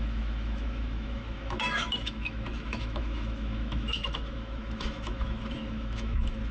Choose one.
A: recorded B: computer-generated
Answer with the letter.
B